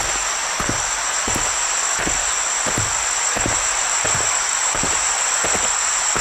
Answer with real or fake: real